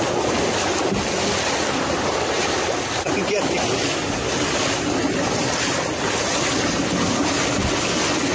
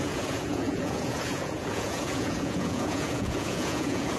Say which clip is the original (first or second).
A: first